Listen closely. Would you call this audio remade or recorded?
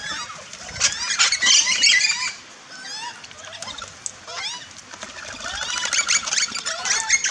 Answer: recorded